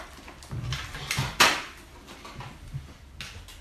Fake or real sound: real